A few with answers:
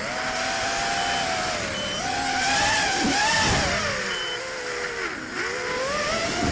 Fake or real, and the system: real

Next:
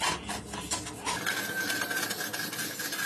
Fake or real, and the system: real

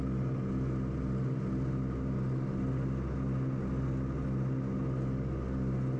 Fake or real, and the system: real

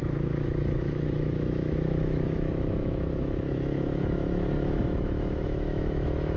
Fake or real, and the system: fake, autoencoder, DAC-VAE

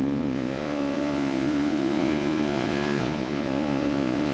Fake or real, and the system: fake, vocoder, Vocos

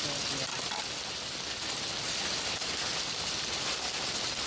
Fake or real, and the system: real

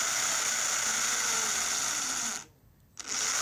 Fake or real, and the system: real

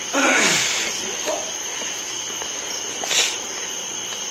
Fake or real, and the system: real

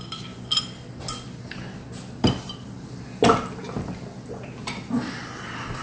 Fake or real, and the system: real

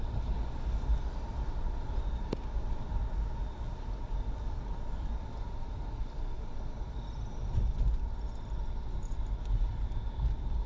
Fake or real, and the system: fake, vocoder, BigVGAN v2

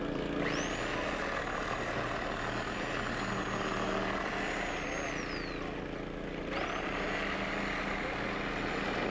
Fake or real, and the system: real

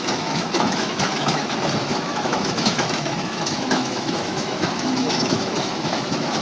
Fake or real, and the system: fake, autoencoder, DAC-VAE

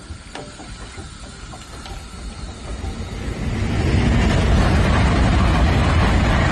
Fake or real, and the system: real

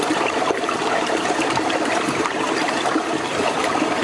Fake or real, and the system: fake, vocoder, BigVGAN v2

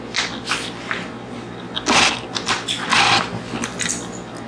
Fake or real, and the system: real